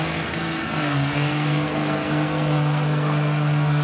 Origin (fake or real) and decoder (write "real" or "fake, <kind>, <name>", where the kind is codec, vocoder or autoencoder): fake, codec, SNAC